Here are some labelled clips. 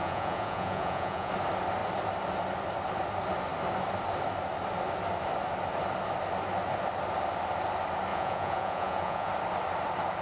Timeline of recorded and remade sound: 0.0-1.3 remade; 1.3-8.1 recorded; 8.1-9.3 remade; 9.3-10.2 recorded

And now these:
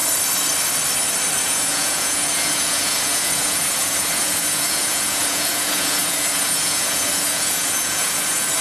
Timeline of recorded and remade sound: 0.0-1.4 recorded; 1.4-8.6 remade

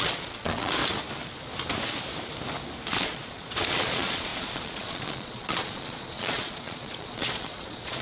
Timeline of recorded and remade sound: 0.0-0.8 remade; 0.8-3.0 recorded; 3.0-8.0 remade

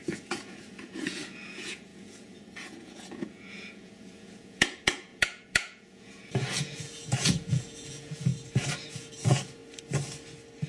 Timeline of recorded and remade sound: 0.0-8.3 remade; 8.3-8.9 recorded; 8.9-9.6 remade; 9.6-10.7 recorded

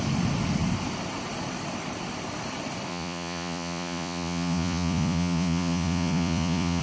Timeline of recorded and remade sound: 0.0-2.9 recorded; 2.9-6.8 remade

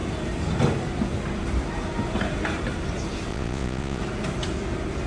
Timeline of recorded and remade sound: 0.0-3.3 recorded; 3.3-4.0 remade; 4.0-5.1 recorded